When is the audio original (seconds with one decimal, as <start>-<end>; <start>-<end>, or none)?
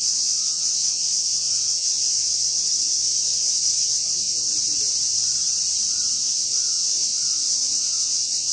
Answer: 4.5-6.1